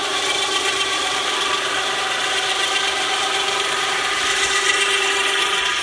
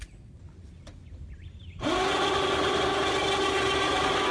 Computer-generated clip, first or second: first